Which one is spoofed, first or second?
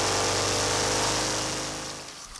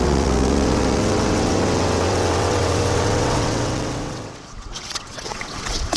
second